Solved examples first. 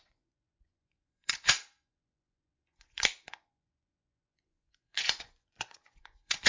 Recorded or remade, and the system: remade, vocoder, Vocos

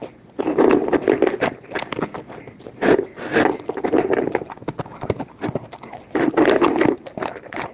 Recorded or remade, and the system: recorded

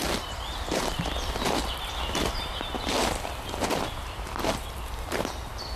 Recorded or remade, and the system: recorded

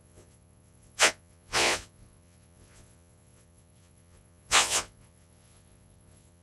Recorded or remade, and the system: remade, vocoder, Vocos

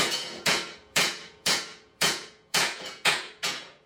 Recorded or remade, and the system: remade, vocoder, Vocos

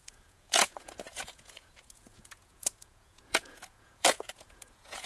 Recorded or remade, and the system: remade, vocoder, Vocos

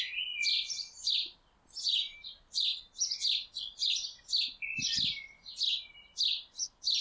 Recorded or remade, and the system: recorded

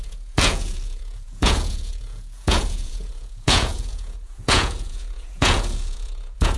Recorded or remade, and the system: remade, vocoder, Vocos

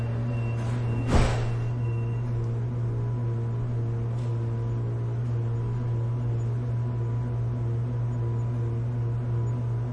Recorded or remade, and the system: recorded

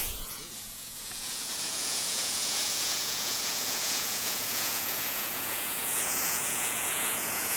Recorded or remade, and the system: remade, vocoder, Vocos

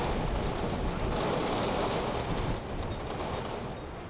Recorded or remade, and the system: recorded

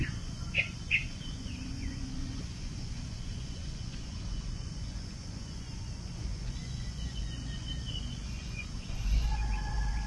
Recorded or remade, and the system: remade, vocoder, Vocos